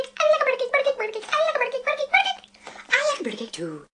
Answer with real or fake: fake